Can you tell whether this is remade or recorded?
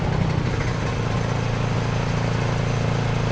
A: recorded